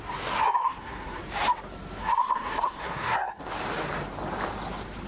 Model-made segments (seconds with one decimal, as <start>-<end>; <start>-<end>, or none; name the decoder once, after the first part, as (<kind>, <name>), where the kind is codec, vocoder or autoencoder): 0.4-1.2 (codec, SNAC); 2.0-3.4

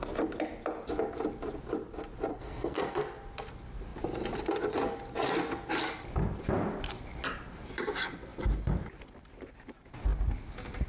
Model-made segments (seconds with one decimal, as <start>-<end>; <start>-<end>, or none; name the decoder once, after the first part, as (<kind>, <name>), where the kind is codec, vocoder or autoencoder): 2.3-3.0 (codec, SNAC)

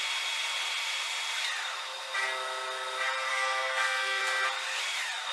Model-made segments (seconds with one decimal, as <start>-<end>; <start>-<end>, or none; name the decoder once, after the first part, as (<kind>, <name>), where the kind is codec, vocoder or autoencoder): 3.3-4.2 (codec, SNAC)

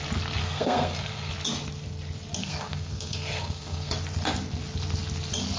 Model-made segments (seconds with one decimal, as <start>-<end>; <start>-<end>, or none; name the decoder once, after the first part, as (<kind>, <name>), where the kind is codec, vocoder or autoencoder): 0.4-1.3 (codec, SNAC); 2.4-3.9

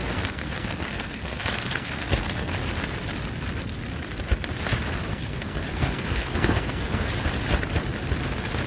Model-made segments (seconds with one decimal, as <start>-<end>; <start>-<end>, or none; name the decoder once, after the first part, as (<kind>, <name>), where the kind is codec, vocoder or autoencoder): 0.0-2.5 (codec, SNAC); 5.1-7.1

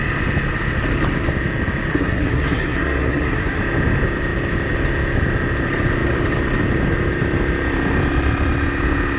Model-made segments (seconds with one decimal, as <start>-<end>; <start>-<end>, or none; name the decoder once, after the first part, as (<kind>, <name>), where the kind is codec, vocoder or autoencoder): 1.9-3.6 (codec, SNAC)

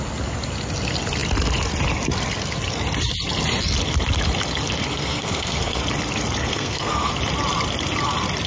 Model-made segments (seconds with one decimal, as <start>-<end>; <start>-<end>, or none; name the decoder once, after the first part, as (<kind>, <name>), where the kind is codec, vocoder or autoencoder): 4.9-5.8 (codec, SNAC); 6.4-7.1

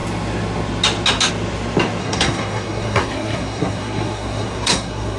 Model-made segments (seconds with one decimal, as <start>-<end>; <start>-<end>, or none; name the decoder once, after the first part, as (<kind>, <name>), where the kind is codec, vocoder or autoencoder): 2.0-5.2 (codec, SNAC)